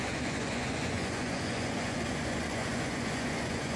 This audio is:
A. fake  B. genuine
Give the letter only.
A